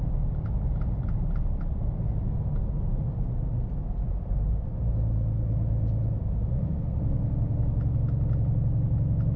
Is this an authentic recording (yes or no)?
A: yes